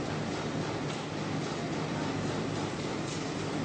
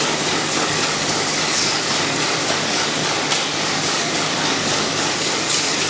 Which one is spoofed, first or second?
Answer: second